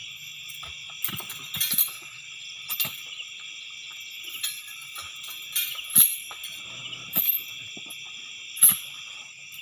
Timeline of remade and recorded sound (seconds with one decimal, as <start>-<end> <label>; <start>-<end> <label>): 0.0-9.6 recorded